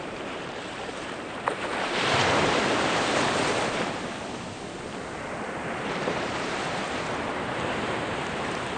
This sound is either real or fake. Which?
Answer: fake